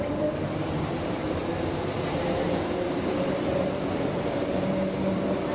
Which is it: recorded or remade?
remade